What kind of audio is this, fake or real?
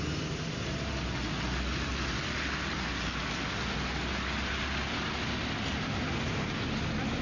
real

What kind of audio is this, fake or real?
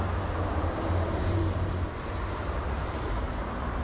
fake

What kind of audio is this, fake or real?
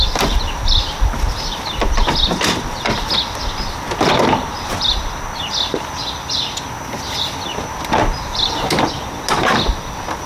real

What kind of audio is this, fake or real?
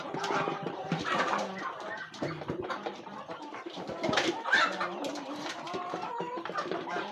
fake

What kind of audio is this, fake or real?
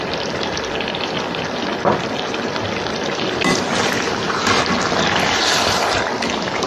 real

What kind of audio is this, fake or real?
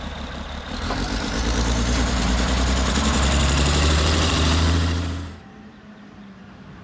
fake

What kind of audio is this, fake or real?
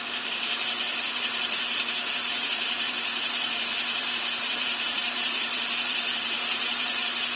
fake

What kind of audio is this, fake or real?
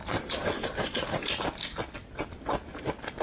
real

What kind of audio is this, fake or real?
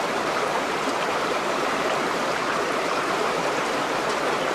fake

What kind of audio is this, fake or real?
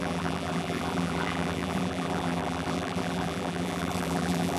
fake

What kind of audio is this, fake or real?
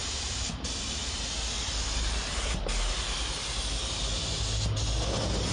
real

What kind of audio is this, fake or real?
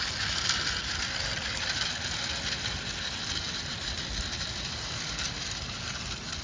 real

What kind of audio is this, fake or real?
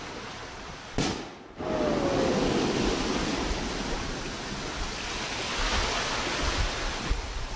real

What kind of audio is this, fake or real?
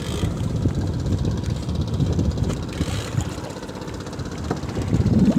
real